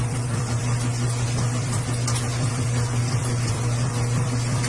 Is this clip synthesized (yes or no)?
yes